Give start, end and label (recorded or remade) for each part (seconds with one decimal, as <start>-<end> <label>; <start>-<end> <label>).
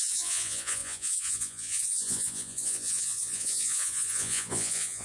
0.0-5.0 remade